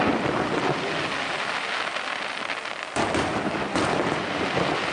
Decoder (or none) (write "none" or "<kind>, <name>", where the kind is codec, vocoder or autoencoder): none